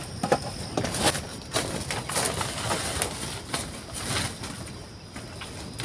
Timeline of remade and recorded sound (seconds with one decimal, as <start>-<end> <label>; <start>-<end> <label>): 0.0-5.8 recorded